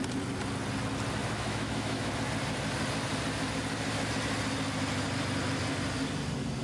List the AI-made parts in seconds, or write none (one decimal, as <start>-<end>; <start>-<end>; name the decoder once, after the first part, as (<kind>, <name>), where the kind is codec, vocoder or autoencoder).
1.2-2.1 (autoencoder, DAC-VAE)

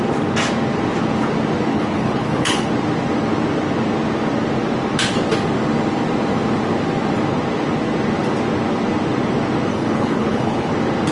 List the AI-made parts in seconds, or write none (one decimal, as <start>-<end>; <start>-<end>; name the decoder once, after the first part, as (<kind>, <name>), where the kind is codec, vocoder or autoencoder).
1.7-2.7 (codec, HILCodec); 9.7-10.7

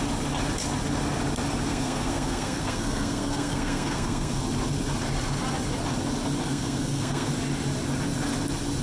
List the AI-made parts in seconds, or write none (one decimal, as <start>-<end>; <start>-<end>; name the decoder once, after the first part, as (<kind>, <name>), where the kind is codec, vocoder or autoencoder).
1.7-4.4 (codec, SNAC); 6.5-7.3

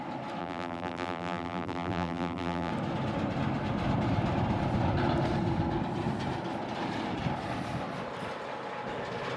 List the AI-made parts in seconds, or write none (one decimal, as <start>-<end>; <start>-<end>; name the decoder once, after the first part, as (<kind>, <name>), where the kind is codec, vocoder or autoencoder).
0.4-2.7 (vocoder, BigVGAN v2)